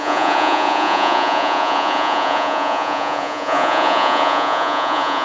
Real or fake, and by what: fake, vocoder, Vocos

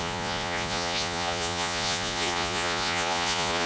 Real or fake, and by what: fake, vocoder, Vocos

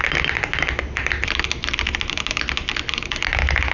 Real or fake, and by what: real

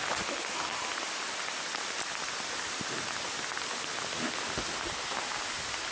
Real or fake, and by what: real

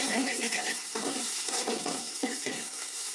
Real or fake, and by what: fake, codec, SNAC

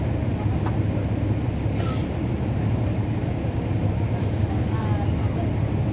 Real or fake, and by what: real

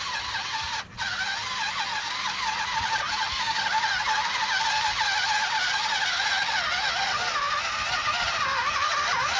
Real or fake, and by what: real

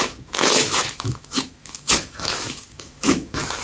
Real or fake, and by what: fake, autoencoder, DAC-VAE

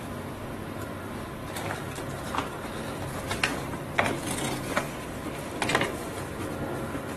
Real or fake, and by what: real